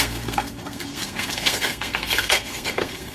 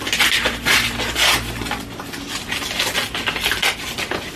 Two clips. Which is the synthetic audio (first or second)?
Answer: first